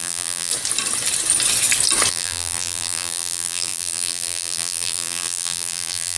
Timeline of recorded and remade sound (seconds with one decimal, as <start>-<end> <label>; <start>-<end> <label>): 0.0-0.5 remade; 0.5-2.1 recorded; 2.1-6.2 remade